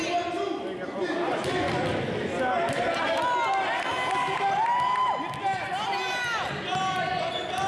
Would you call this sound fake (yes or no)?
no